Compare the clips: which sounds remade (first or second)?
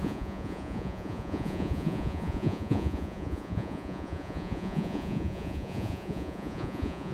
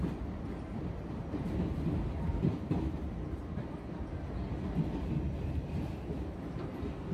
first